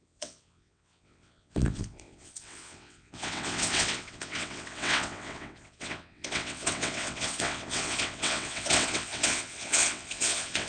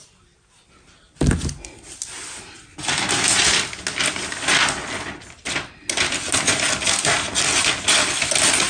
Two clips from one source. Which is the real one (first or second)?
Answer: second